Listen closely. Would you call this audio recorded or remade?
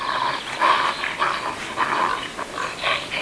recorded